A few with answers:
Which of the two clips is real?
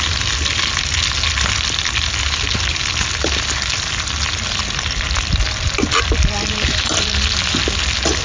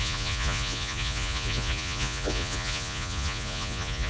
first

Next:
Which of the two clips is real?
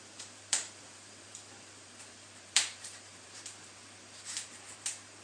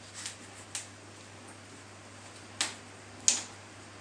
second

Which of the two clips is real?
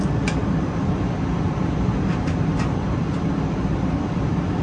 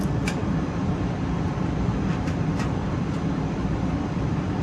first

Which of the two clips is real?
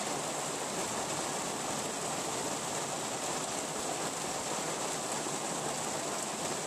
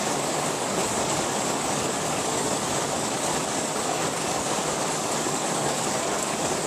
first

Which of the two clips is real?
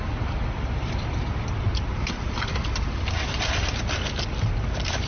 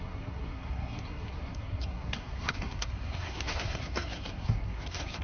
first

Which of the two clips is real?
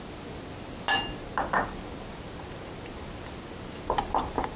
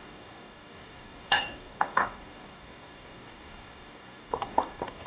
first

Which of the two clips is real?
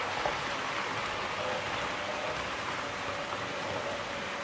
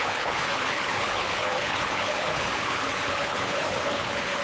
first